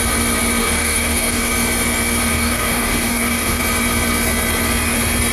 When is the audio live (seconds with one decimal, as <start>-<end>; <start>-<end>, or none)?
0.0-0.6; 1.5-2.3; 3.6-5.3